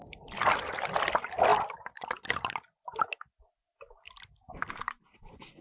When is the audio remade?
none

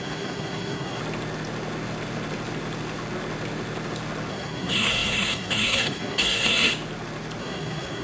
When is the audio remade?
0.0-1.0 (codec, SNAC); 4.3-6.7; 7.4-8.0

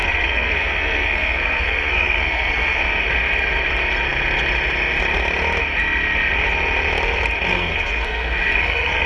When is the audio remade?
0.0-2.8 (codec, SNAC); 7.5-9.1

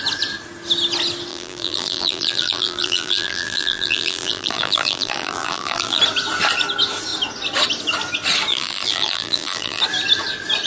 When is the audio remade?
1.3-6.0 (vocoder, BigVGAN v2); 8.5-9.8

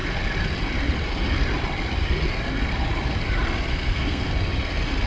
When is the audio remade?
3.7-4.3 (codec, SNAC)

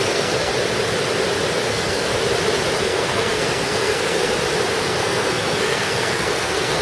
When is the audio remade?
0.0-0.5 (codec, SNAC); 1.7-2.1; 2.8-4.3; 4.8-6.8

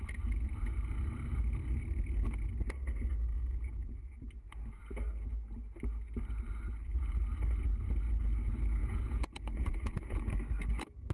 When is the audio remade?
3.3-4.0 (vocoder, Vocos); 8.8-10.3

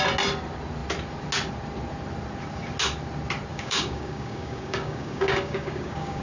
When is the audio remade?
3.5-6.2 (codec, DAC)